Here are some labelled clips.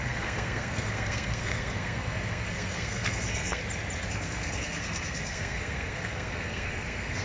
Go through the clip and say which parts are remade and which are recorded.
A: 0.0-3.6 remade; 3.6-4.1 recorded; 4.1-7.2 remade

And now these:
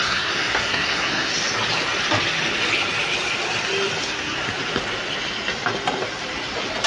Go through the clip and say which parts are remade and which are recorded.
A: 0.0-1.3 remade; 1.3-4.0 recorded; 4.0-4.4 remade; 4.4-6.9 recorded

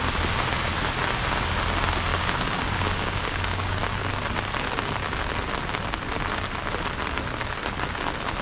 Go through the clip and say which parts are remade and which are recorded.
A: 0.0-2.1 recorded; 2.1-3.8 remade; 3.8-8.4 recorded

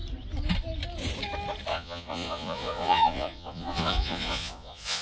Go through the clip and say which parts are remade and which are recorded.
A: 0.0-1.7 recorded; 1.7-5.0 remade

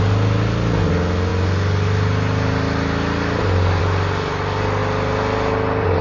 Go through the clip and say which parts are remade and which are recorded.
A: 0.0-6.0 recorded

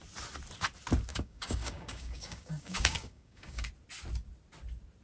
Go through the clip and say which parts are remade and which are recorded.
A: 0.0-1.1 recorded; 1.1-3.7 remade; 3.7-5.0 recorded

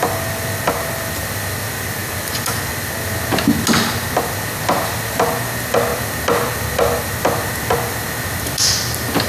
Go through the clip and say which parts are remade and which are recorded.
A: 0.0-9.3 recorded